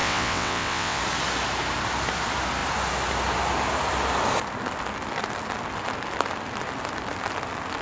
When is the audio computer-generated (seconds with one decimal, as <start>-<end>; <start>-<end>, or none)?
0.0-1.0